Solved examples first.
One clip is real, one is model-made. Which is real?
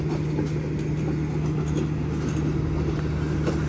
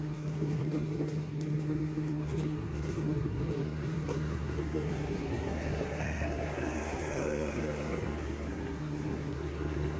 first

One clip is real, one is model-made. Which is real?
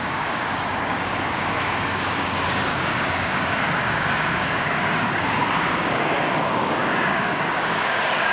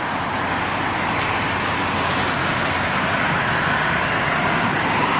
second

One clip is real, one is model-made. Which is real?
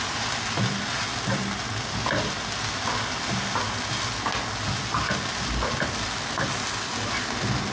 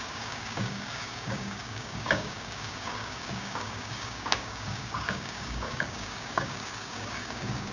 first